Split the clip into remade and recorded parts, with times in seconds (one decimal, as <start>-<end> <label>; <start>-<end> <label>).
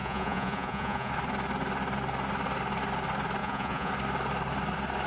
0.0-1.1 remade; 1.1-3.4 recorded; 3.4-3.9 remade; 3.9-5.1 recorded